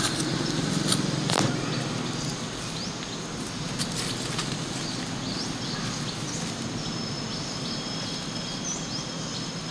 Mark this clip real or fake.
real